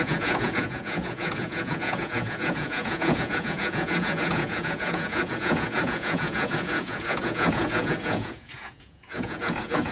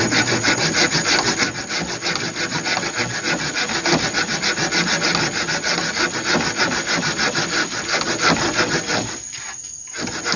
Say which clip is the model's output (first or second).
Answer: first